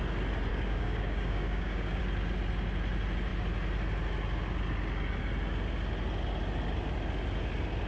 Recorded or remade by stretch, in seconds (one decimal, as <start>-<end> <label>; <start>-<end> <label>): 0.0-0.5 recorded; 0.5-2.0 remade; 2.0-7.9 recorded